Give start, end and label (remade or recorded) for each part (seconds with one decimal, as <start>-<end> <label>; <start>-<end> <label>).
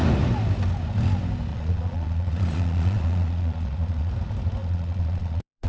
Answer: 0.0-1.5 recorded; 1.5-4.1 remade; 4.1-4.6 recorded; 4.6-5.7 remade